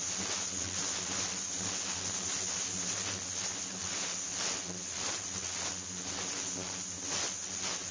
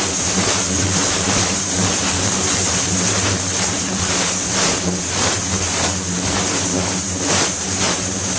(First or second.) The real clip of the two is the first